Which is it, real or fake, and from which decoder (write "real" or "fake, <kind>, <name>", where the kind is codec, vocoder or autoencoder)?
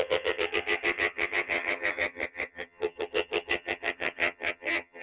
fake, vocoder, HiFi-GAN